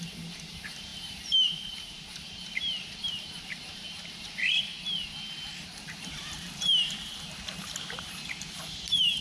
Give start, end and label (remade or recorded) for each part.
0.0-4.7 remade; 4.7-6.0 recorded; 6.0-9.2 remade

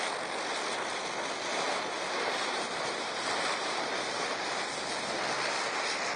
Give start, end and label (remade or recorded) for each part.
0.0-1.5 recorded; 1.5-5.2 remade; 5.2-6.2 recorded

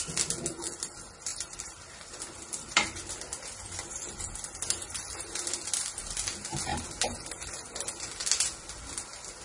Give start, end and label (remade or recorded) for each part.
0.0-1.3 recorded; 1.3-4.3 remade; 4.3-6.7 recorded; 6.7-7.8 remade; 7.8-8.2 recorded; 8.2-8.8 remade; 8.8-9.4 recorded

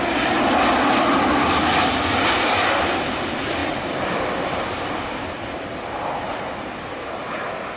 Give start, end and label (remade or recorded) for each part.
0.0-3.6 recorded; 3.6-6.4 remade; 6.4-7.8 recorded

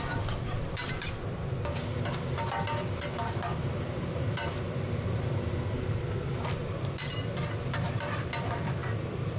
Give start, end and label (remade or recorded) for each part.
0.0-9.4 remade

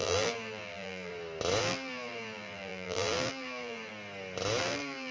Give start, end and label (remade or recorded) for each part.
0.0-1.1 remade; 1.1-1.6 recorded; 1.6-3.9 remade; 3.9-4.6 recorded; 4.6-5.1 remade

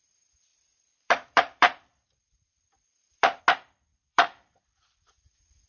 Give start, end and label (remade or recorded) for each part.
0.0-0.5 recorded; 0.5-3.4 remade; 3.4-3.9 recorded; 3.9-5.2 remade; 5.2-5.7 recorded

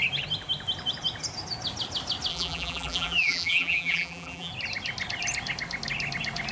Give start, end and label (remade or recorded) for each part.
0.0-2.3 recorded; 2.3-4.5 remade; 4.5-6.5 recorded